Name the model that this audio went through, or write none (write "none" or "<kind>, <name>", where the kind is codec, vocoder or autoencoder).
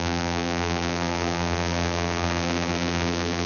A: vocoder, BigVGAN v2